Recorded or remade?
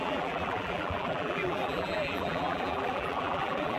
remade